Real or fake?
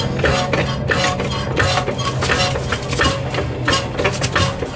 real